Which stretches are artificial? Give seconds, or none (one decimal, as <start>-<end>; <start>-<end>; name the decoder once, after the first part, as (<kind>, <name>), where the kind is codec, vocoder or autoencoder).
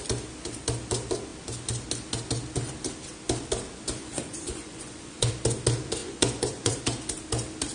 4.0-5.3 (vocoder, Vocos); 6.0-6.8